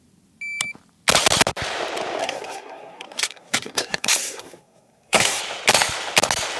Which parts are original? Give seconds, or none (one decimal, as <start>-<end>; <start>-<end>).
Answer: 0.0-2.2; 5.4-6.6